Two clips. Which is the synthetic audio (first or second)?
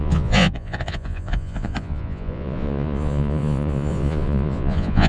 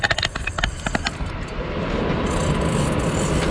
first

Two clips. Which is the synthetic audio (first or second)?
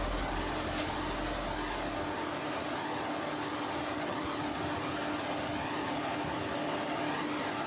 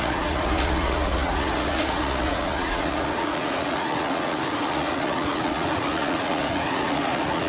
second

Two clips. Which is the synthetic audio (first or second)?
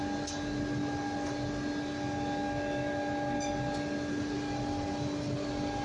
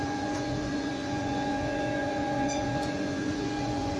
second